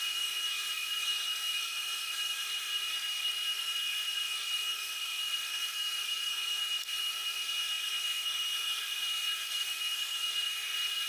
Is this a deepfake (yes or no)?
yes